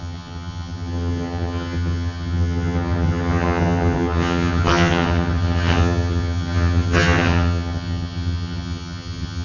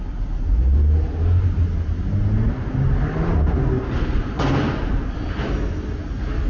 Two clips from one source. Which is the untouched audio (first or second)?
second